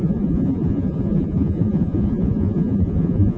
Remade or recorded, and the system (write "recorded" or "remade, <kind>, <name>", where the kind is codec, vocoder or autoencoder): remade, vocoder, Vocos